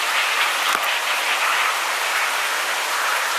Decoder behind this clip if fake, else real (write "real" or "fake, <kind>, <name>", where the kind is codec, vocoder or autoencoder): real